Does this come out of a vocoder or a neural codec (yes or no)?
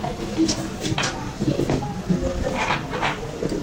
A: no